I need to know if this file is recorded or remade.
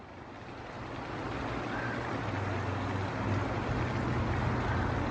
recorded